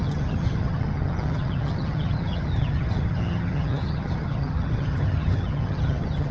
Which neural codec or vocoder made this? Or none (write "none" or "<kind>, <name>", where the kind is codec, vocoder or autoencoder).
vocoder, HiFi-GAN